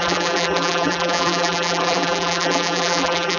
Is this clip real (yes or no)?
no